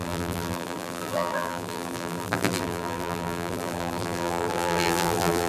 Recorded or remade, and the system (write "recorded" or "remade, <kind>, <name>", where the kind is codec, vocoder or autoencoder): remade, vocoder, BigVGAN v2